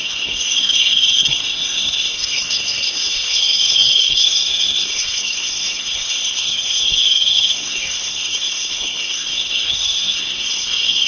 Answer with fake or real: fake